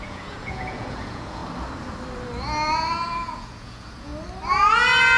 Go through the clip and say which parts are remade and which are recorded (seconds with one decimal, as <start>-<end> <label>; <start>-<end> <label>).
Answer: 0.0-1.4 remade; 1.4-3.1 recorded; 3.1-4.1 remade; 4.1-5.2 recorded